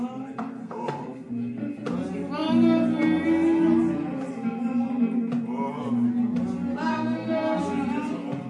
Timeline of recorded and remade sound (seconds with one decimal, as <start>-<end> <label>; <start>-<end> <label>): 0.0-0.6 recorded; 0.6-1.3 remade; 1.3-6.9 recorded; 6.9-7.6 remade; 7.6-8.5 recorded